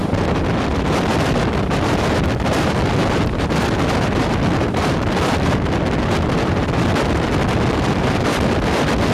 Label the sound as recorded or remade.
remade